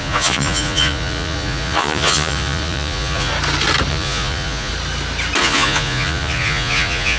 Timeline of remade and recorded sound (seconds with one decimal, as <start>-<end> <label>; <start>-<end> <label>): 0.0-3.3 remade; 3.3-3.9 recorded; 3.9-4.7 remade; 4.7-5.4 recorded; 5.4-7.2 remade